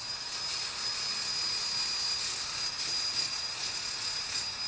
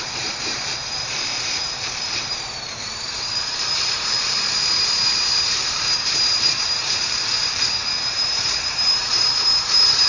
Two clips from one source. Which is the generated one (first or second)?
second